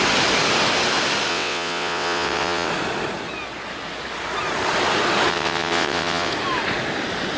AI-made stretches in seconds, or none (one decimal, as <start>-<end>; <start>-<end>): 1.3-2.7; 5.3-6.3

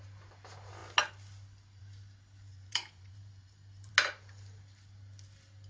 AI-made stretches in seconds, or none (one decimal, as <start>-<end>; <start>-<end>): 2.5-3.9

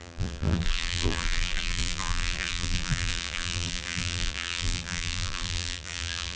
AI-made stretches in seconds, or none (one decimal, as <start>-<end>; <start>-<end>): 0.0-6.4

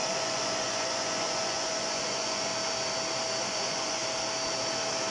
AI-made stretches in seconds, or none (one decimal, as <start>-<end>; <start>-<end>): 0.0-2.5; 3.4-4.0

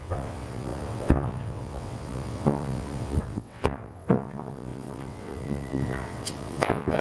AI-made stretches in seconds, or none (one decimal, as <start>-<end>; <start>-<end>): 0.0-7.0

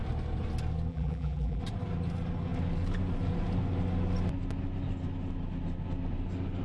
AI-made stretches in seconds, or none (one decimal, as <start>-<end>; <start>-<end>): 0.9-1.6

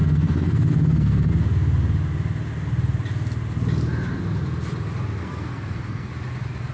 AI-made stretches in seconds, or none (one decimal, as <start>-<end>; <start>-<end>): 0.0-1.3; 5.2-6.1